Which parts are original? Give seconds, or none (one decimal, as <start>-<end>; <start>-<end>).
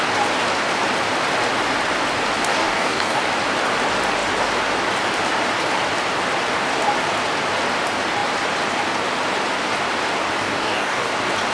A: 0.0-2.5; 3.2-10.4; 11.1-11.5